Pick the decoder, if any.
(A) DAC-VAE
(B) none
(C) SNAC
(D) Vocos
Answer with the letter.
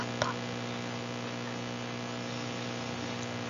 B